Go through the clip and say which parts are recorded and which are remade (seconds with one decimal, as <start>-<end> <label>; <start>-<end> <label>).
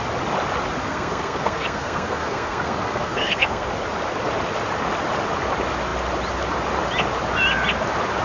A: 0.0-0.8 recorded; 0.8-3.7 remade; 3.7-8.2 recorded